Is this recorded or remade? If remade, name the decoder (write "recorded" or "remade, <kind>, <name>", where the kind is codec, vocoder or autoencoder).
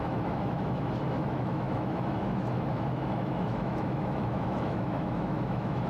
remade, autoencoder, DAC-VAE